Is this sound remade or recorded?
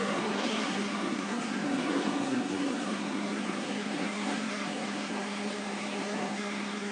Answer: remade